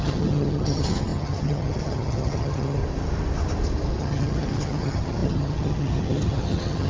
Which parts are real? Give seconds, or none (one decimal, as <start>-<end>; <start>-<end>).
2.8-4.0